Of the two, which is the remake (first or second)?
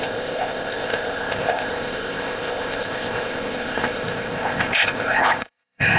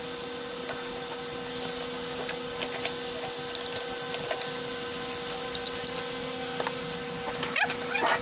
first